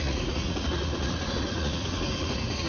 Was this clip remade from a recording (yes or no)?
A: yes